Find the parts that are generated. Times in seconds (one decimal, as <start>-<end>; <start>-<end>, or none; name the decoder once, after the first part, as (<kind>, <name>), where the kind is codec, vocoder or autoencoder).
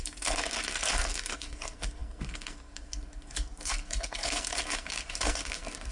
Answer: 0.0-5.9 (codec, SNAC)